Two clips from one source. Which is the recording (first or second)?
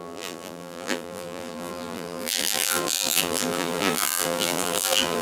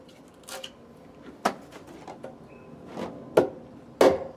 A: second